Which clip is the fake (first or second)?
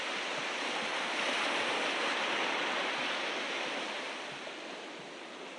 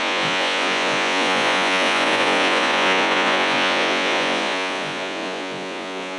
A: second